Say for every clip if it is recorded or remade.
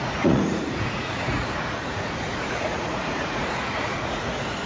remade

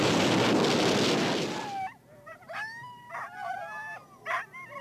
recorded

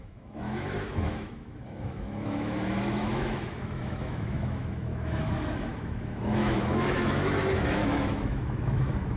remade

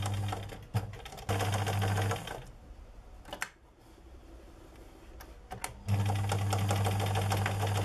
recorded